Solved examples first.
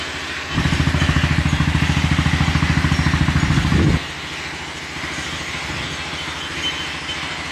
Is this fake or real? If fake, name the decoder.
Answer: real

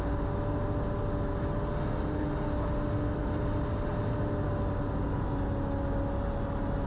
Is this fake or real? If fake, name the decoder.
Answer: real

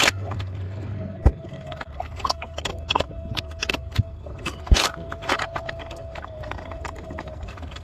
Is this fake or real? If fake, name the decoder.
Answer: fake, codec, SNAC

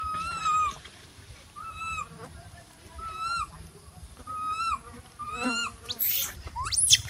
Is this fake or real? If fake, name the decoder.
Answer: fake, vocoder, BigVGAN v2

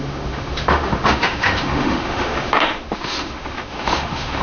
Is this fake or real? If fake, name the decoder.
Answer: fake, autoencoder, DAC-VAE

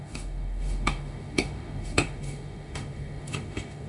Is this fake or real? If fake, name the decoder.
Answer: fake, autoencoder, DAC-VAE